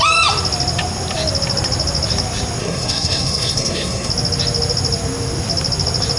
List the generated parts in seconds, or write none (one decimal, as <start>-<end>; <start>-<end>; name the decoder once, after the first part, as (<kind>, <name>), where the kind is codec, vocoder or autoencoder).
2.6-4.1 (codec, SNAC)